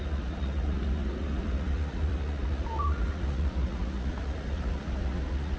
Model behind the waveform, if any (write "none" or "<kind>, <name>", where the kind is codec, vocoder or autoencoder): vocoder, Vocos